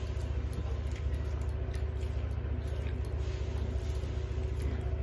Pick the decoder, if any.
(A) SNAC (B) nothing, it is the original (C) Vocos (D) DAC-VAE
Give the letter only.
B